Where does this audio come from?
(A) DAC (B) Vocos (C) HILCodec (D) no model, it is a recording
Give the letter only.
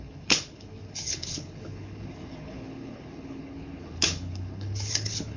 C